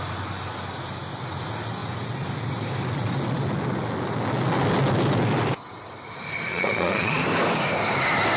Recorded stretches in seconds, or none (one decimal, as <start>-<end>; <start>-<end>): 0.0-6.5; 7.2-8.4